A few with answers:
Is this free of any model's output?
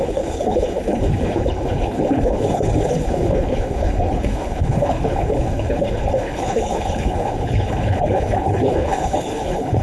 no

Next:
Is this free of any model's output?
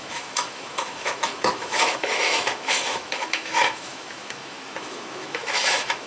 no